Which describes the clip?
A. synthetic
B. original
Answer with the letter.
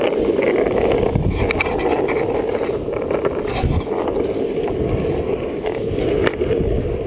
B